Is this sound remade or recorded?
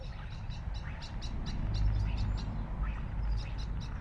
recorded